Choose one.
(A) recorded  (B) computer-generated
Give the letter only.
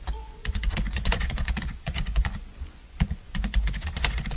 B